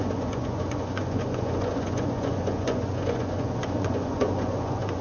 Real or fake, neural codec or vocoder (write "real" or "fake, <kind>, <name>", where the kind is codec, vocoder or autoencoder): fake, vocoder, Vocos